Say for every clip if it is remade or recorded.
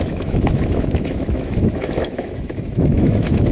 remade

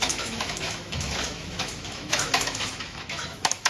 remade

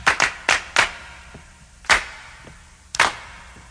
recorded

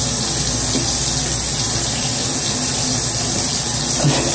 recorded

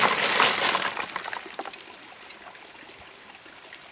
recorded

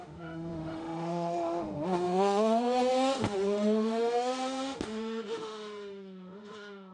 remade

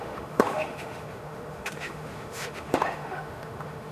remade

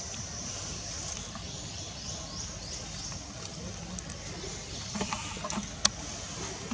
recorded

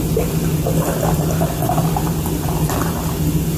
recorded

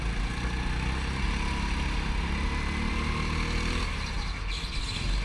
recorded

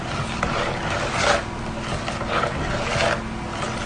recorded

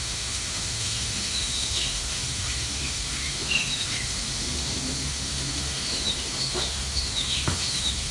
remade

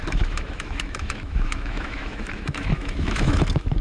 remade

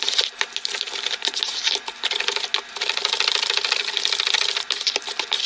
recorded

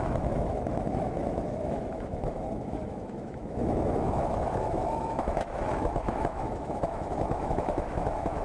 remade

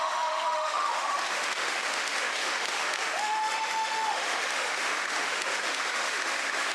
remade